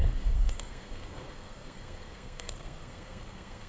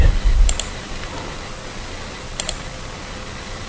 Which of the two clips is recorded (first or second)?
second